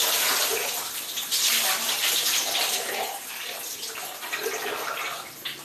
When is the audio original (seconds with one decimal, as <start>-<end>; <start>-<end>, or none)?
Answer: 0.0-5.6